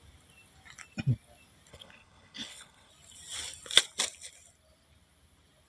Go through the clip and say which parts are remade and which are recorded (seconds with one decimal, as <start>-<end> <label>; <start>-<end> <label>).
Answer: 0.0-1.7 recorded; 1.7-2.9 remade; 2.9-5.7 recorded